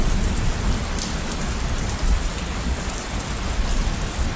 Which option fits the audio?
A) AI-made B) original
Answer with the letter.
B